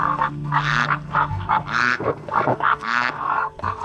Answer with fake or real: fake